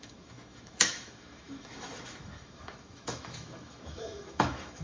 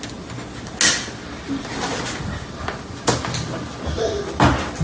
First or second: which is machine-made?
first